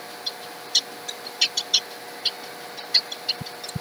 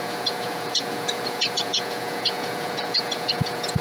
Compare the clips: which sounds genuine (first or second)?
first